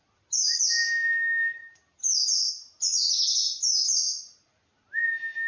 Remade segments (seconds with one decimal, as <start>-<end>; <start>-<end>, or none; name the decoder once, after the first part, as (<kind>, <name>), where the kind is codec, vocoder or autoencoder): none